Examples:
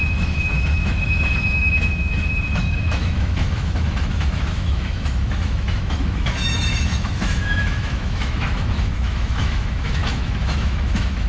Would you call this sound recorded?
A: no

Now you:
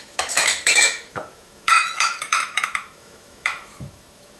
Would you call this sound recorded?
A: no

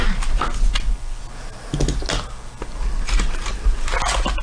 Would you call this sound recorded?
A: yes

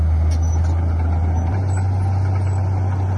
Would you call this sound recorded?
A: yes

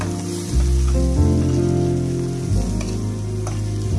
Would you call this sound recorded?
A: yes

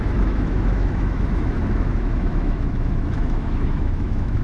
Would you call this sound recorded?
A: no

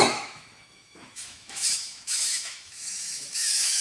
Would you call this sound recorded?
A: no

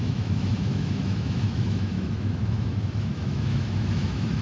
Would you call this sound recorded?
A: no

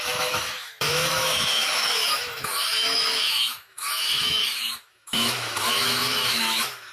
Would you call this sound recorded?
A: no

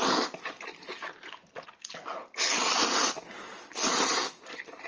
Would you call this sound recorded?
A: yes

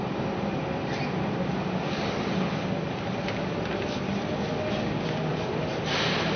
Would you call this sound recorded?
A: yes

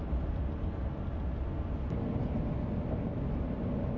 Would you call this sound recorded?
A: yes